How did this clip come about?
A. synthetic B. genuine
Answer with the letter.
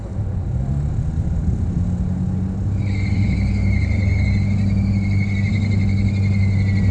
B